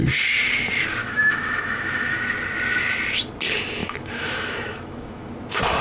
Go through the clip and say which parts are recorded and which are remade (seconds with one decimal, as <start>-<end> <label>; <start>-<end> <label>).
0.0-1.0 recorded; 1.0-2.2 remade; 2.2-3.8 recorded; 3.8-5.3 remade; 5.3-5.8 recorded